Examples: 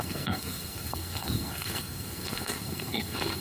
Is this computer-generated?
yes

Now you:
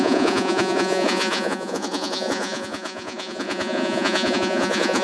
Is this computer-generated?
yes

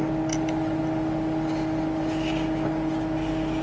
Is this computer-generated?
no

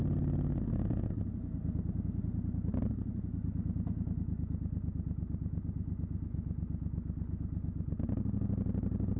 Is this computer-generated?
no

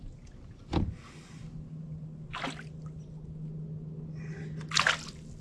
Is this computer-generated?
no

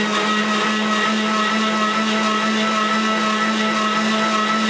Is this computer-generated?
no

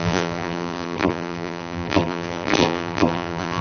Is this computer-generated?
yes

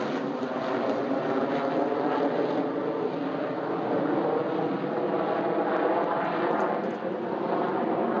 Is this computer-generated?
no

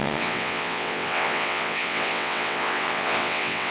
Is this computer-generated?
yes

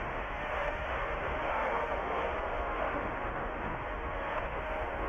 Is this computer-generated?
yes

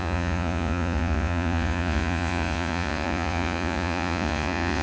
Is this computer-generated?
yes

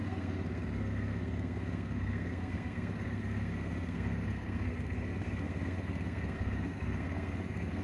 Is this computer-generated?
yes